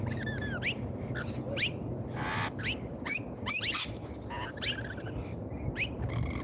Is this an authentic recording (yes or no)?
yes